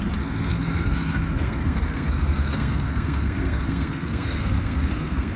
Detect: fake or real fake